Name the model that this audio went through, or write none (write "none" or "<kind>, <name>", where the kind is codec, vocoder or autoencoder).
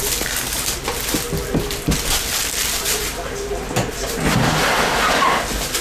none